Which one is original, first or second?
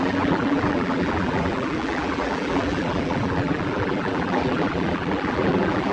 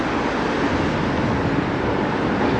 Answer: second